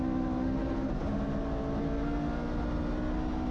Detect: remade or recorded recorded